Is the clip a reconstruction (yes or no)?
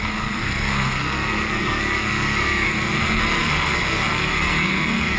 yes